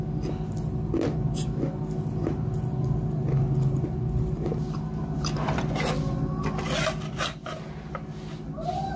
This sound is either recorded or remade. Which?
recorded